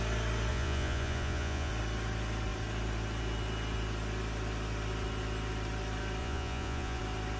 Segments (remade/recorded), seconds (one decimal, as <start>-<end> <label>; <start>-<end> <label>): 0.0-0.5 recorded; 0.5-1.7 remade; 1.7-6.2 recorded; 6.2-7.0 remade; 7.0-7.4 recorded